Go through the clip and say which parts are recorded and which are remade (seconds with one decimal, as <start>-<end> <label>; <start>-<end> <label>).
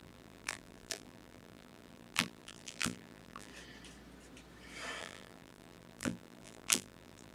0.0-3.5 remade; 3.5-5.0 recorded; 5.0-7.3 remade